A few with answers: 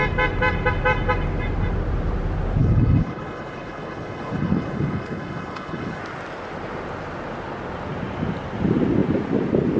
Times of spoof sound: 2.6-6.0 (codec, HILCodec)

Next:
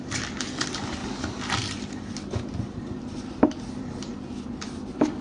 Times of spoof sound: none

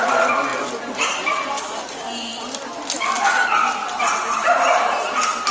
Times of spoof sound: none